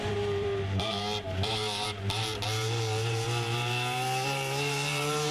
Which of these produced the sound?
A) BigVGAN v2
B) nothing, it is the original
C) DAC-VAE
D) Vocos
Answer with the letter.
A